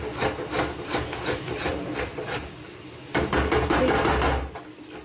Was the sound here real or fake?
real